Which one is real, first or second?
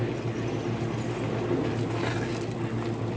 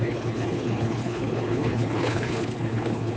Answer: first